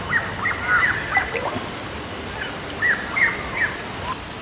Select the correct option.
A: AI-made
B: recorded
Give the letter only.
B